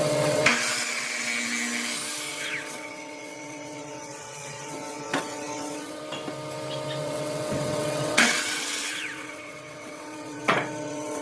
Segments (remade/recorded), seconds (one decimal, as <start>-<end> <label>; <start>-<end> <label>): 0.0-0.4 remade; 0.4-2.3 recorded; 2.3-6.0 remade; 6.0-7.0 recorded; 7.0-11.2 remade